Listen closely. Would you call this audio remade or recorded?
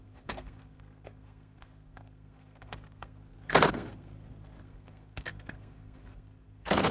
remade